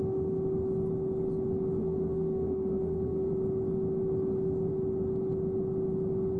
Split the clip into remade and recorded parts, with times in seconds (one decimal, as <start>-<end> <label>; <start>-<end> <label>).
0.0-1.8 recorded; 1.8-3.3 remade; 3.3-6.4 recorded